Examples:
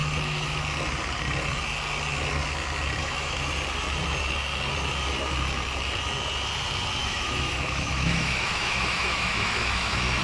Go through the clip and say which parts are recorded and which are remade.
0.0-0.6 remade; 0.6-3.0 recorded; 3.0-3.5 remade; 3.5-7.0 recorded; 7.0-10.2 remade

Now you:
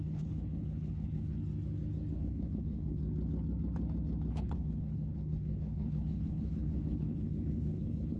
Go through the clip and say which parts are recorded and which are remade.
0.0-1.4 remade; 1.4-2.2 recorded; 2.2-3.0 remade; 3.0-4.3 recorded; 4.3-8.2 remade

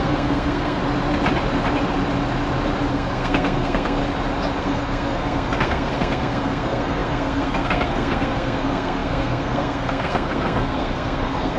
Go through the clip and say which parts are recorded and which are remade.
0.0-0.8 remade; 0.8-2.9 recorded; 2.9-4.0 remade; 4.0-4.6 recorded; 4.6-11.6 remade

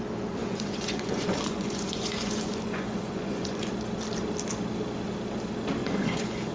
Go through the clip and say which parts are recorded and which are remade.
0.0-0.4 recorded; 0.4-3.7 remade; 3.7-5.8 recorded; 5.8-6.5 remade

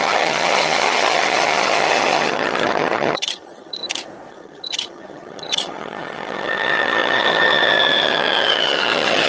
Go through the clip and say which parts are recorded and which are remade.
0.0-3.8 remade; 3.8-4.3 recorded; 4.3-9.3 remade

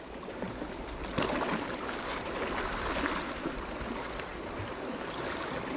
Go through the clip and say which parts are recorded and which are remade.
0.0-1.5 recorded; 1.5-2.3 remade; 2.3-5.8 recorded

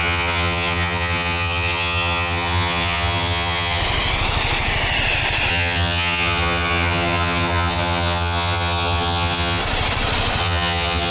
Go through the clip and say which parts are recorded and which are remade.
0.0-3.8 remade; 3.8-5.5 recorded; 5.5-9.6 remade; 9.6-10.4 recorded; 10.4-11.1 remade

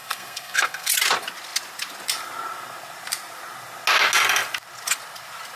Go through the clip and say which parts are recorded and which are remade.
0.0-0.9 remade; 0.9-5.6 recorded